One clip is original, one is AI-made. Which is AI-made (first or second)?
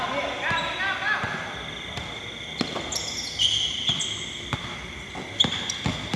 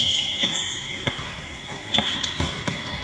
second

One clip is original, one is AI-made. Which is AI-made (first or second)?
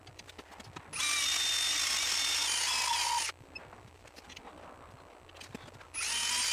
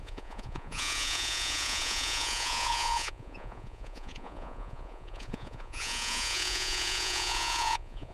second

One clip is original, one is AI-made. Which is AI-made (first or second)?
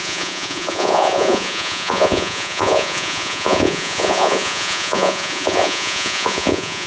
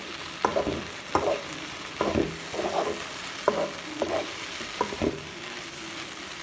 first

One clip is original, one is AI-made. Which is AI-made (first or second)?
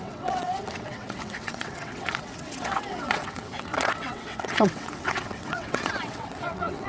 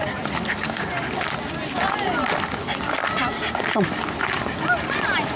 first